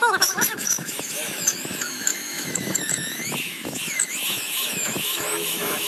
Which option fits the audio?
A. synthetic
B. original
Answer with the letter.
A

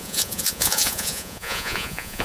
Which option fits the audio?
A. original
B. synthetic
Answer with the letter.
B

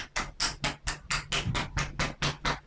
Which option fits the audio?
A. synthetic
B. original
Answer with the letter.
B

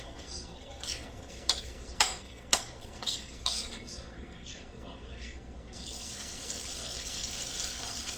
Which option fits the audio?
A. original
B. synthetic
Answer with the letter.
B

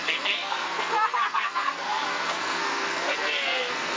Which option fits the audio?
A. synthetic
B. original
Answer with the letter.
A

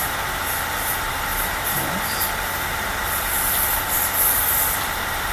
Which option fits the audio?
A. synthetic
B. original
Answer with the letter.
A